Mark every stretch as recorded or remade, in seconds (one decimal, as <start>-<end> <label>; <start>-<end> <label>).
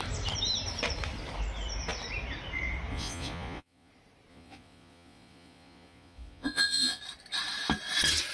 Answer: 0.0-2.9 recorded; 2.9-3.9 remade; 3.9-4.3 recorded; 4.3-7.0 remade; 7.0-8.3 recorded